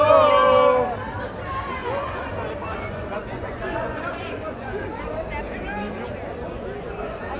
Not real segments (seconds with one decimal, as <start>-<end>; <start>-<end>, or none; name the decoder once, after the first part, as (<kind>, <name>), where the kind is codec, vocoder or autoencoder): 1.8-2.3 (vocoder, Vocos); 2.7-4.9; 6.5-7.4